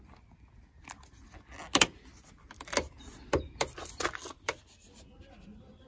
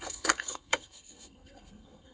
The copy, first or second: second